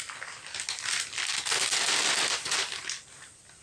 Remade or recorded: recorded